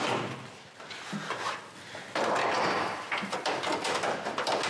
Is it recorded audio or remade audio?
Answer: recorded